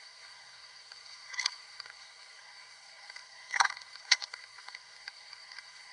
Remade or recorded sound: remade